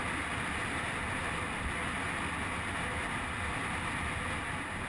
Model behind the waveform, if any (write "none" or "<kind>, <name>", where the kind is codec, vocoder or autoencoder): none